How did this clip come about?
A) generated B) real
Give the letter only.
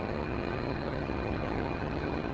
A